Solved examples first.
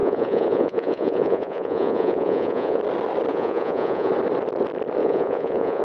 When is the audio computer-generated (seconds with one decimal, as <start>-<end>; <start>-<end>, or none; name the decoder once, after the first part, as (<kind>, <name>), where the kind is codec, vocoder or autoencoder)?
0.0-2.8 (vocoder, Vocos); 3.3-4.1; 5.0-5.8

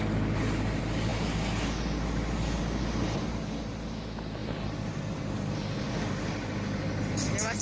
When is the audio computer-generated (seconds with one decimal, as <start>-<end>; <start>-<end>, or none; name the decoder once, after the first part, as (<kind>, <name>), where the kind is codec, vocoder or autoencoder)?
4.4-5.2 (vocoder, BigVGAN v2)

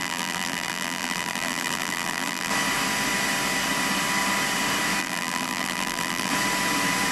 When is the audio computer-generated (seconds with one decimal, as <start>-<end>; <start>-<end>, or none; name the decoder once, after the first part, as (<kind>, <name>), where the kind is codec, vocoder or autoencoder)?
0.0-2.5 (vocoder, BigVGAN v2); 5.0-6.3

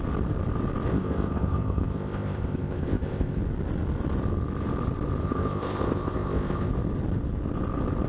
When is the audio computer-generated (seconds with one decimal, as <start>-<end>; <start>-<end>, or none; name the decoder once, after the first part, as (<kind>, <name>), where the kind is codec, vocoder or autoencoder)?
0.9-3.4 (codec, ZipCodec); 5.2-6.7

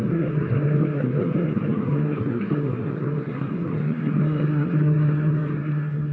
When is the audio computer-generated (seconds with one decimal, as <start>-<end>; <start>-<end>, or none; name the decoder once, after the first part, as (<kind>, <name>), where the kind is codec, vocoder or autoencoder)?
0.0-6.1 (codec, SNAC)

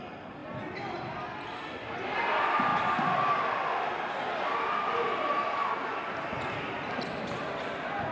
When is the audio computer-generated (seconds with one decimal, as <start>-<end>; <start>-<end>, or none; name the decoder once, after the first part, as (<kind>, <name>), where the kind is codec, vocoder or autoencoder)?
none

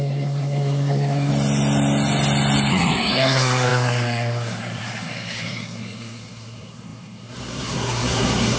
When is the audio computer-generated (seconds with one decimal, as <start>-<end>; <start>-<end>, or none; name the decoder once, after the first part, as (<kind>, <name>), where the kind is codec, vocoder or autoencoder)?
0.0-1.3 (codec, SNAC); 2.7-8.6